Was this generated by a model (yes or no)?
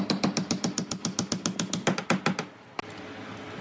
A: no